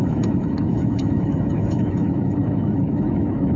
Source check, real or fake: fake